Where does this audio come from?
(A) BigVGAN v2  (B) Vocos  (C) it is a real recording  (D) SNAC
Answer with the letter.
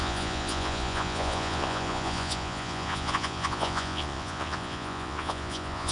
B